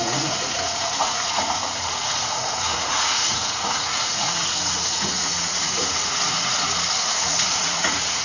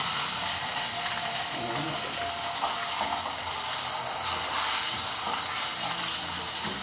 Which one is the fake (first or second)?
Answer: first